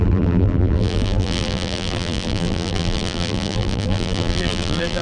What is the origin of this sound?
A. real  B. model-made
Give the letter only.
B